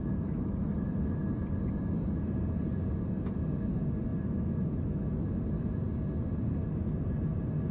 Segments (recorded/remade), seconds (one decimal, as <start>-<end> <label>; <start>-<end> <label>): 0.0-1.0 remade; 1.0-4.1 recorded; 4.1-5.0 remade; 5.0-7.7 recorded